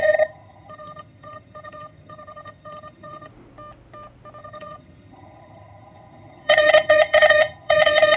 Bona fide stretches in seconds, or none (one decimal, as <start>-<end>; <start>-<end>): 3.3-4.4